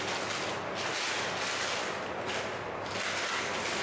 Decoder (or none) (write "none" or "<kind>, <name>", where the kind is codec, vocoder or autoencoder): none